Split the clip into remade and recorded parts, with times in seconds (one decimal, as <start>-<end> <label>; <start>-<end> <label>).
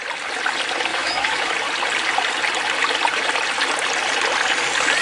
0.0-0.9 recorded; 0.9-1.5 remade; 1.5-5.0 recorded